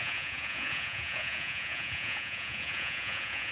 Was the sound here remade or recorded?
remade